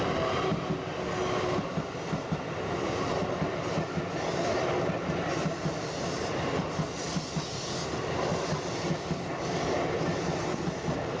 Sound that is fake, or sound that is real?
real